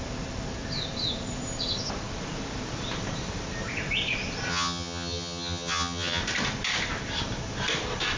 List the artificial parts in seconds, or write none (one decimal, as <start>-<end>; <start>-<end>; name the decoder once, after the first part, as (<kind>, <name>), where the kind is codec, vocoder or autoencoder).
4.5-6.2 (vocoder, HiFi-GAN)